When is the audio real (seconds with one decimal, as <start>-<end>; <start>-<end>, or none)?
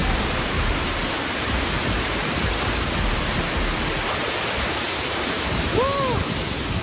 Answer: 2.5-6.8